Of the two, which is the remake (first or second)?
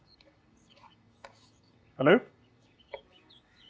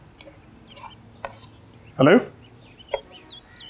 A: first